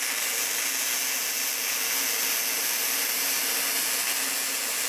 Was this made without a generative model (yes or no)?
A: yes